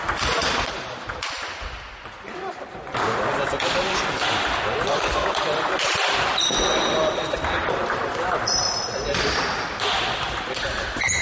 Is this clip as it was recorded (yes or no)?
yes